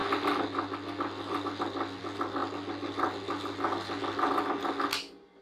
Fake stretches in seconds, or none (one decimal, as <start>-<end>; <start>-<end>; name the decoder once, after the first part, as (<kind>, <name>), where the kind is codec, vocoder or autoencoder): none